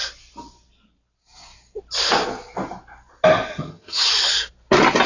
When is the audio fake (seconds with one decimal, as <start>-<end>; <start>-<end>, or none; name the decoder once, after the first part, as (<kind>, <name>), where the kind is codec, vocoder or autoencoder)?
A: 3.5-4.1 (vocoder, HiFi-GAN)